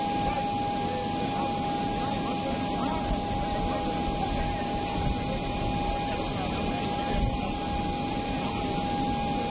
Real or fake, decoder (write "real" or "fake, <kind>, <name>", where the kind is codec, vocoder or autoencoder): real